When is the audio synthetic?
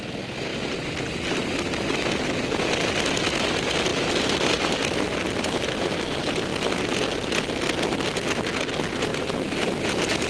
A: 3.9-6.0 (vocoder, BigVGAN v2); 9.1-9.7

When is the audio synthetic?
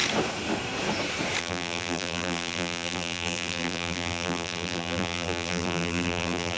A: 1.4-6.6 (vocoder, BigVGAN v2)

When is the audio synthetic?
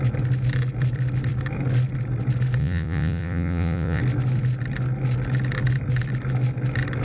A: 2.6-4.0 (vocoder, Vocos)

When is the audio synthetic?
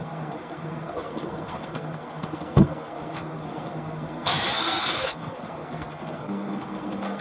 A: 0.0-7.2 (codec, SNAC)